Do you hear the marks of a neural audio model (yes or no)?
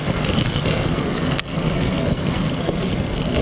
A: yes